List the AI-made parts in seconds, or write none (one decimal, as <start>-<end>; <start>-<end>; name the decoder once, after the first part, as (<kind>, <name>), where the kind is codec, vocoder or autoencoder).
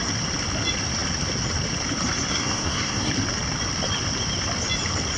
2.3-3.1 (codec, SNAC)